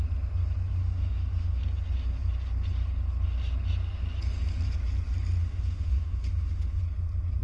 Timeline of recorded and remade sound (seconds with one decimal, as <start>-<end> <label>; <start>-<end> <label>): 0.0-0.8 recorded; 0.8-1.6 remade; 1.6-5.4 recorded; 5.4-6.8 remade; 6.8-7.4 recorded